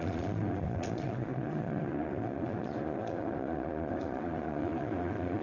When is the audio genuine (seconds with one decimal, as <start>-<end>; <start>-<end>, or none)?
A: none